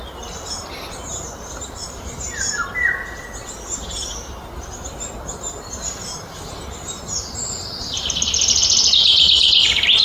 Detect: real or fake real